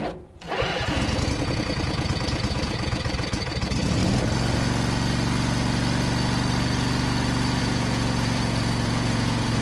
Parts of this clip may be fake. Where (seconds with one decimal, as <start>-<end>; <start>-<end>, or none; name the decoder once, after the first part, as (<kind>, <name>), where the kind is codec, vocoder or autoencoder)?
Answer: 0.0-4.0 (vocoder, Vocos); 7.6-9.6